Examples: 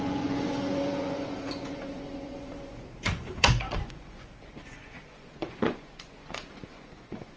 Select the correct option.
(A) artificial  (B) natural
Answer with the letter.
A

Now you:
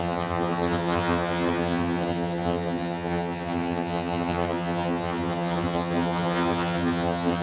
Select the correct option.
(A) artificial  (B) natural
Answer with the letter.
A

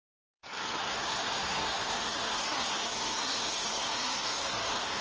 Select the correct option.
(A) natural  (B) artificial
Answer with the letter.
B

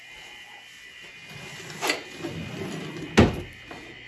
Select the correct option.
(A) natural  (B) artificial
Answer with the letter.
A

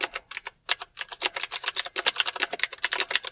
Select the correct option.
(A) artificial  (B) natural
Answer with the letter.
B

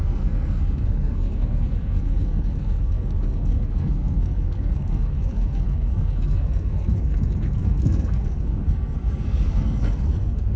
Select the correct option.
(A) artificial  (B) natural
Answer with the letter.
A